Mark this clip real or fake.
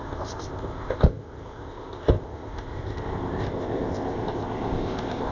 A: fake